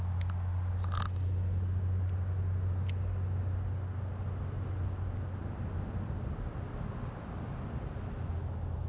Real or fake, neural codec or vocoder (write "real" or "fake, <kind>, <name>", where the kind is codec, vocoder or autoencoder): real